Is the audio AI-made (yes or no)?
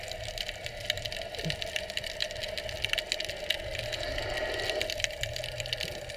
no